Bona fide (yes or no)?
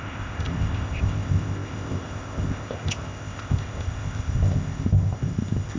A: no